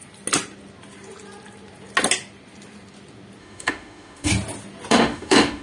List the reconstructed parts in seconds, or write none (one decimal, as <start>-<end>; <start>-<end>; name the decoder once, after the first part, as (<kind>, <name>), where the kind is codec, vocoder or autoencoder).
3.4-4.3 (autoencoder, DAC-VAE); 4.9-5.6